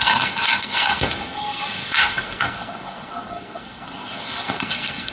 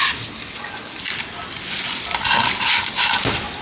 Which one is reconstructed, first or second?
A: first